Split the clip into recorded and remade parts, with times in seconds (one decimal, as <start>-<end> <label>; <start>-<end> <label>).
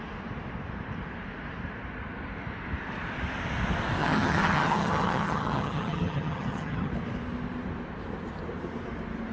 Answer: 0.0-4.0 recorded; 4.0-6.9 remade; 6.9-9.3 recorded